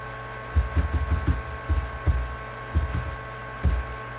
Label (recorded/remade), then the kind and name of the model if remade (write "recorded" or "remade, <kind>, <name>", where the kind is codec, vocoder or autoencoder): recorded